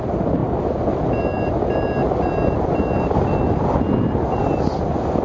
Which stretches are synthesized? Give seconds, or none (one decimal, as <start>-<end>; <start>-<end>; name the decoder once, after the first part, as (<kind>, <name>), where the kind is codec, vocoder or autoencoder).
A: none